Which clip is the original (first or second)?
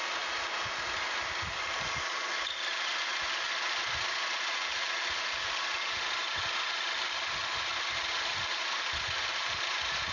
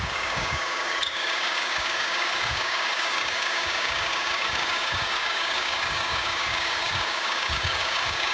first